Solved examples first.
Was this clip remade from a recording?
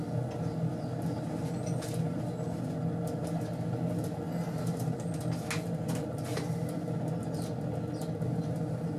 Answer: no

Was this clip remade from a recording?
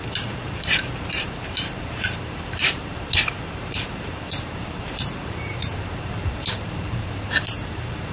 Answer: yes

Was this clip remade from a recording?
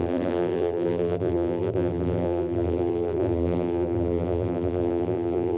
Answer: yes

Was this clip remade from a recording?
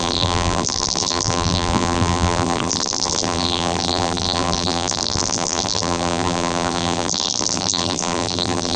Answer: yes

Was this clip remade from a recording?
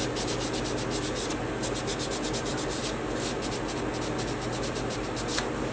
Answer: no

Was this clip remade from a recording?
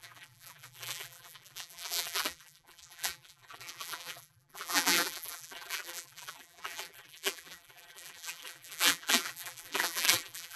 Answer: yes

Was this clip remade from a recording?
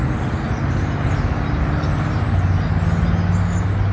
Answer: no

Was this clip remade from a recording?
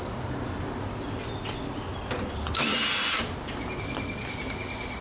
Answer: no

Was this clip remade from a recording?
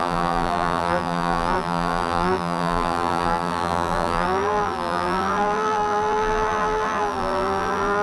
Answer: yes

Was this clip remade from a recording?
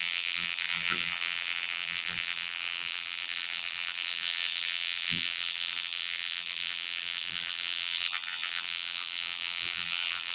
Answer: yes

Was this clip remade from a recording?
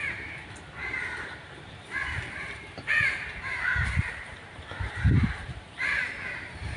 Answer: yes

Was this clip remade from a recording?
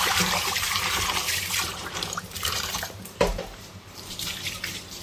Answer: yes